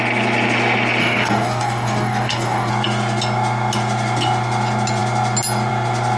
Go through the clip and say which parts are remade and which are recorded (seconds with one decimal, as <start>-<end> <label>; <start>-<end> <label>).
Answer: 0.0-1.0 recorded; 1.0-2.7 remade; 2.7-6.2 recorded